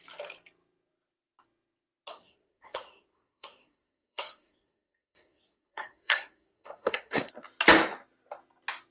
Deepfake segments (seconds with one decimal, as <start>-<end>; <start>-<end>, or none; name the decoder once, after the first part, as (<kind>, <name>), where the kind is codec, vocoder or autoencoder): 2.1-7.3 (codec, SNAC)